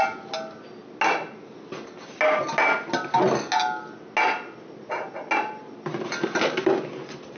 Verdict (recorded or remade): recorded